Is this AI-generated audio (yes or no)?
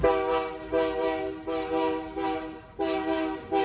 no